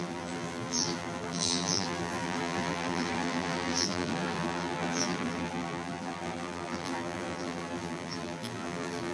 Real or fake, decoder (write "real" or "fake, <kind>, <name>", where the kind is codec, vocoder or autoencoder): fake, vocoder, BigVGAN v2